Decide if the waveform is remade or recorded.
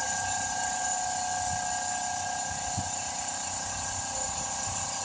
recorded